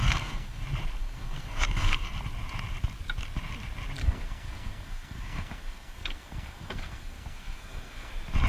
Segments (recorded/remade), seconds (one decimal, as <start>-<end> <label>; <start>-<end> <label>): 0.0-0.6 remade; 0.6-1.0 recorded; 1.0-2.1 remade; 2.1-4.0 recorded; 4.0-8.1 remade; 8.1-8.5 recorded